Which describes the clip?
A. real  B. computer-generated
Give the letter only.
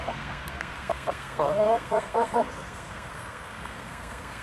B